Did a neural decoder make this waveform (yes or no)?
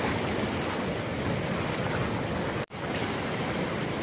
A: no